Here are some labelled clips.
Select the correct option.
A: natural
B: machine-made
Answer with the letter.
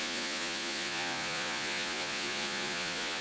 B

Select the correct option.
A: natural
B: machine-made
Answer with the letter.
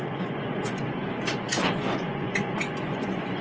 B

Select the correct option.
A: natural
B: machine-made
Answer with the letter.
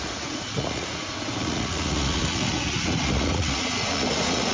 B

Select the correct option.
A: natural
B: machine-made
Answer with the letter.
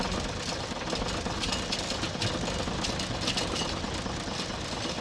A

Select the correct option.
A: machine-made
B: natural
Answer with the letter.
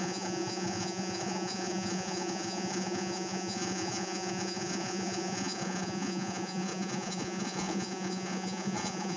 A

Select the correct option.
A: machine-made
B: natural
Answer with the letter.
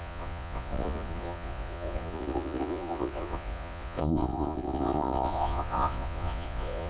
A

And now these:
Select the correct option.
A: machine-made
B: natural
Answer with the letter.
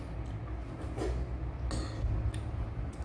B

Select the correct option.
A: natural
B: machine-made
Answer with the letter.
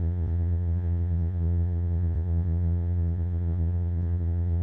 B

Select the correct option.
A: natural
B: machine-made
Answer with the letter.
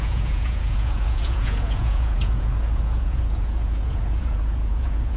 B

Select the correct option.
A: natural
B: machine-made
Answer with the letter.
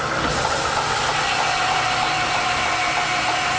A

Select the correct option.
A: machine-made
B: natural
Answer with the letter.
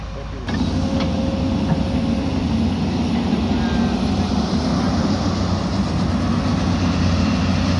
B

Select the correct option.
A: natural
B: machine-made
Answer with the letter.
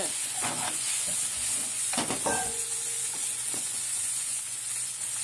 B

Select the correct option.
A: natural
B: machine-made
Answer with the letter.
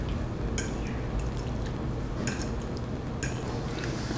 A